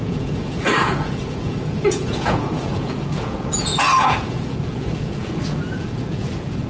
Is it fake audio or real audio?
fake